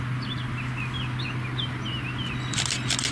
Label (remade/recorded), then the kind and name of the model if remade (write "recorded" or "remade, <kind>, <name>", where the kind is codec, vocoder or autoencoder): recorded